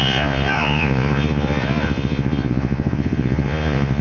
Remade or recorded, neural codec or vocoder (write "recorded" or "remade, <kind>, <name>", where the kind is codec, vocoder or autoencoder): remade, vocoder, Vocos